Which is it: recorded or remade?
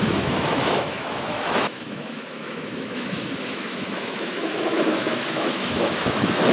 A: remade